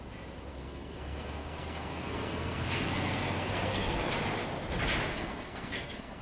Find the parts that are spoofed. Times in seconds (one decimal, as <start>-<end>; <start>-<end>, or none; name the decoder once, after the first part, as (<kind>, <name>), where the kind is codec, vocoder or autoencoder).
0.5-4.1 (codec, SNAC); 5.1-6.2